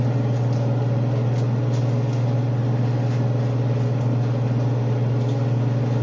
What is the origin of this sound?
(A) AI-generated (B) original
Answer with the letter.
B